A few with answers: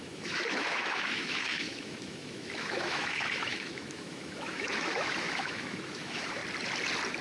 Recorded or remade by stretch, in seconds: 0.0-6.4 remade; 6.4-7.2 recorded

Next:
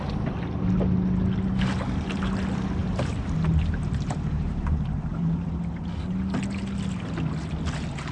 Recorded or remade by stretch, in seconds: 0.0-2.8 recorded; 2.8-5.5 remade; 5.5-8.1 recorded

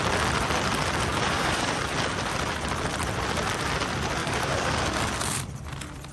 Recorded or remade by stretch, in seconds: 0.0-1.1 recorded; 1.1-1.8 remade; 1.8-4.2 recorded; 4.2-5.1 remade; 5.1-6.1 recorded

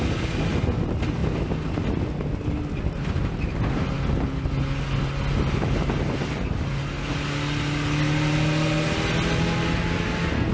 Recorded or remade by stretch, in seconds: 0.0-10.5 recorded